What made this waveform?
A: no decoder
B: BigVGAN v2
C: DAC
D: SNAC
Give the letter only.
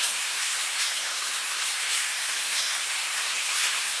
D